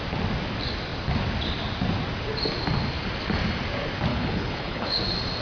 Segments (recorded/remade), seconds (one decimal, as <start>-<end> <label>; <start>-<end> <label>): 0.0-4.1 recorded; 4.1-5.0 remade; 5.0-5.4 recorded